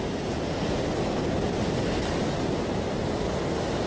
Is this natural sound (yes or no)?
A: yes